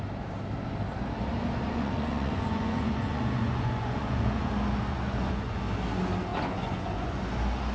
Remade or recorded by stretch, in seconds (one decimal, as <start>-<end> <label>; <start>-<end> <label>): 0.0-1.7 recorded; 1.7-4.5 remade; 4.5-4.9 recorded; 4.9-5.6 remade; 5.6-6.3 recorded; 6.3-7.2 remade; 7.2-7.7 recorded